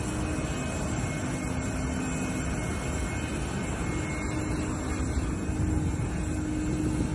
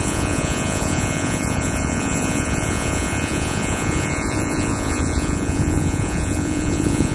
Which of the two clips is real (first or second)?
first